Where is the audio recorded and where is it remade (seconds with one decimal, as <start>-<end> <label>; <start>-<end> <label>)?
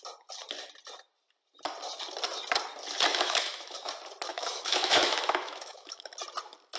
0.0-3.1 recorded; 3.1-3.9 remade; 3.9-4.3 recorded; 4.3-6.1 remade; 6.1-6.8 recorded